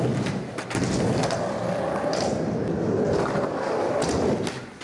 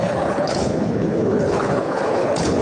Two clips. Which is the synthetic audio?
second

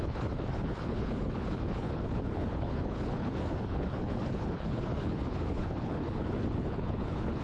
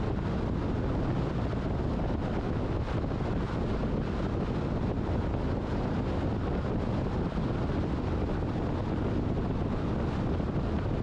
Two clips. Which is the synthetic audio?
first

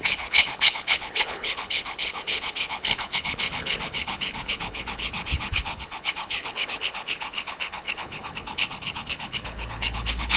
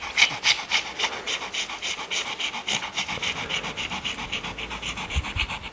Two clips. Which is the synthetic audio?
first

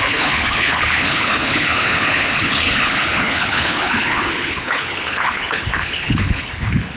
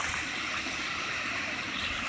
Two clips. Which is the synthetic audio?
first